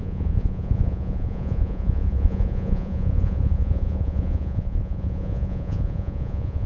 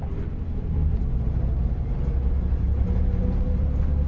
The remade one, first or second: first